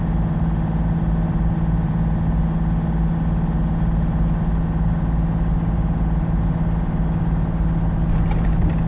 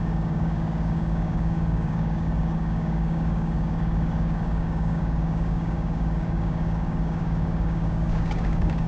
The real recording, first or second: first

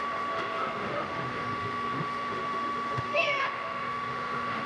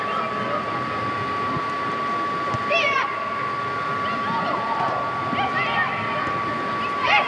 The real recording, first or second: second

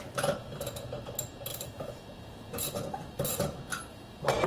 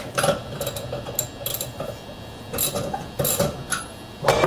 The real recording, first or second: second